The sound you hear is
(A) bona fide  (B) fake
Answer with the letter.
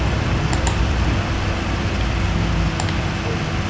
B